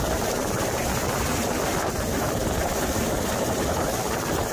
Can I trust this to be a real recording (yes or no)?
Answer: no